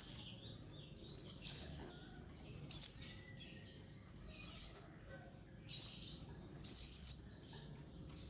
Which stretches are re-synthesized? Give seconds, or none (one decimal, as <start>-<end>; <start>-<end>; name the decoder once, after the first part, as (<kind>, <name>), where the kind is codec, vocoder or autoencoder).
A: 1.0-1.9 (codec, HILCodec); 4.6-5.1; 6.5-7.2